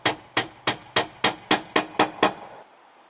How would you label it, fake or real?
real